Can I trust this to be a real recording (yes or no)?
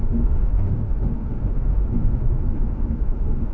no